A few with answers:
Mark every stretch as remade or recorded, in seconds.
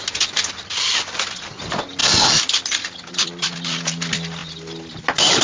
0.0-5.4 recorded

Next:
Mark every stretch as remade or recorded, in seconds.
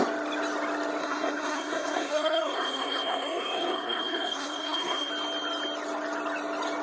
0.0-1.0 recorded; 1.0-5.1 remade; 5.1-6.8 recorded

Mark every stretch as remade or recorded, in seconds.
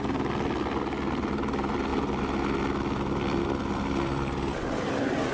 0.0-5.3 recorded